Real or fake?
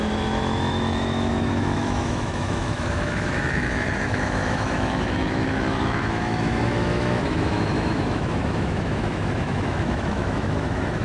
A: fake